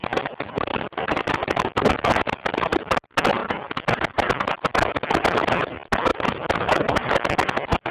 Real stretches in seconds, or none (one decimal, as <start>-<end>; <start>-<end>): 0.0-0.7; 1.3-7.9